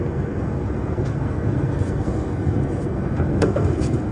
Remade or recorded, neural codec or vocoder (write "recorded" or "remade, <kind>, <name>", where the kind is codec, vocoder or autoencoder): remade, codec, SNAC